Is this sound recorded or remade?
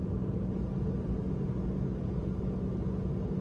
recorded